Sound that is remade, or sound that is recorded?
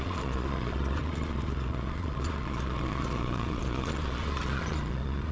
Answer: remade